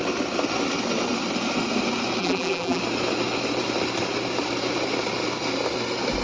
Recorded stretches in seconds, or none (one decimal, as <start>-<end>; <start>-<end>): 0.0-2.2; 2.8-6.2